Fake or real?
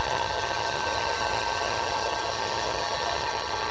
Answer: fake